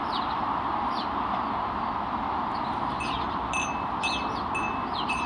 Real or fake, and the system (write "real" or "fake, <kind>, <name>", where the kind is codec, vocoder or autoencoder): real